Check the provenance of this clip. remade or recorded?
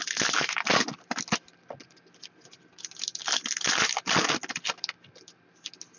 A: recorded